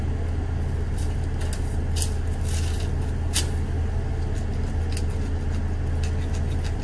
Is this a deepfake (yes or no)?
no